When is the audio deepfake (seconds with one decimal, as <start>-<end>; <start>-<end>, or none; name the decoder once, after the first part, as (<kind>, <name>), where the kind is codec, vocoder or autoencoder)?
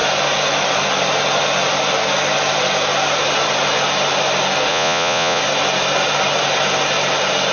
4.7-5.4 (vocoder, Vocos)